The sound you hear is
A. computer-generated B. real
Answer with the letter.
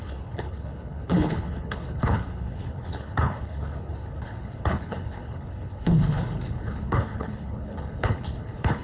A